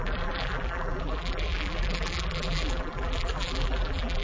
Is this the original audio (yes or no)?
no